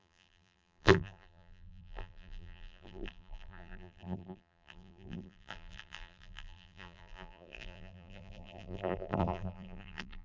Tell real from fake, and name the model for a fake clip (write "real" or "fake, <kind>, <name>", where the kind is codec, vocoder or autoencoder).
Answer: fake, vocoder, BigVGAN v2